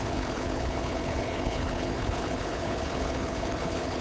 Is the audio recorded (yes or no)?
no